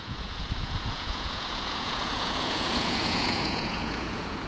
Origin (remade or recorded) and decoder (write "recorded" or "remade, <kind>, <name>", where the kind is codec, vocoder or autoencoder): remade, vocoder, Vocos